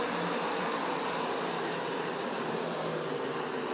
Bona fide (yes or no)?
no